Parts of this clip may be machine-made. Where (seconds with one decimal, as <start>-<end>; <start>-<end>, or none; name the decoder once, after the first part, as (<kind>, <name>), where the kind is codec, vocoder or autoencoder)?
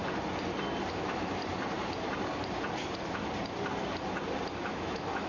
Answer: 0.9-1.4 (autoencoder, DAC-VAE); 4.6-5.3